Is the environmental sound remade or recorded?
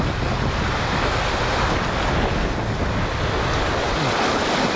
recorded